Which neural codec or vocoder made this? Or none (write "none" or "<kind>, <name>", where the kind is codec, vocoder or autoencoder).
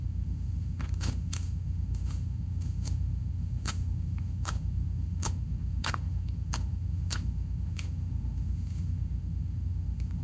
autoencoder, DAC-VAE